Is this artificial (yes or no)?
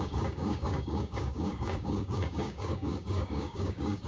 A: yes